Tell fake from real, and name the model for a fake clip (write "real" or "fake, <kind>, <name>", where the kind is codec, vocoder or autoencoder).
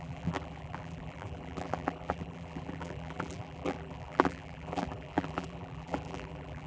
fake, vocoder, BigVGAN v2